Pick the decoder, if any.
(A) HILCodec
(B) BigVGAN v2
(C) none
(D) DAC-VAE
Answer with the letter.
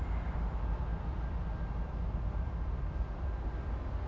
C